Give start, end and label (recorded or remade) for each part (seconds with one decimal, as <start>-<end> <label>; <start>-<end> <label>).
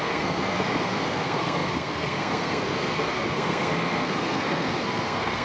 0.0-5.4 remade